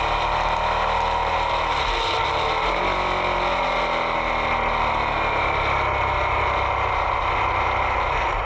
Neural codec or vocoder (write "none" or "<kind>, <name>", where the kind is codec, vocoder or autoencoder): none